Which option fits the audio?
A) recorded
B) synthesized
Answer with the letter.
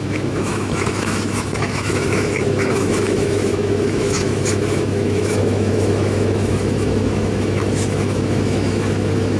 B